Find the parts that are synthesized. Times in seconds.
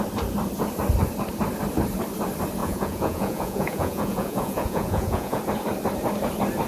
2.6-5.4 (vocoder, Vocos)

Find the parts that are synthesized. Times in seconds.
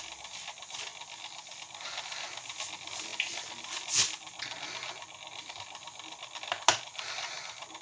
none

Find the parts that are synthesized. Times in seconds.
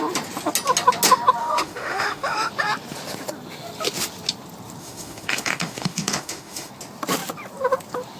1.4-2.5 (autoencoder, DAC-VAE); 4.8-6.7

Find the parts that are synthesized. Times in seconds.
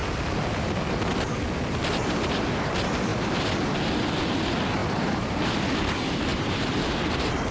4.8-5.4 (vocoder, BigVGAN v2); 6.3-7.0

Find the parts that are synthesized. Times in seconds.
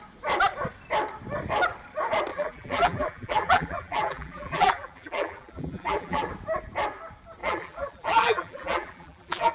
2.3-6.3 (vocoder, BigVGAN v2); 7.4-9.5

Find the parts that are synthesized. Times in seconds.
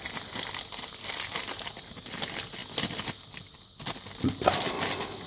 none